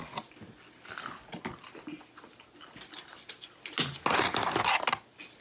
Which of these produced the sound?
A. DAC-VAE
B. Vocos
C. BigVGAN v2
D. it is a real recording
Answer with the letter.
D